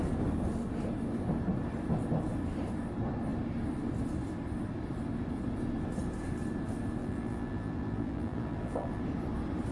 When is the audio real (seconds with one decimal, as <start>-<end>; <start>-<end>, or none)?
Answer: 0.0-7.0; 9.0-9.7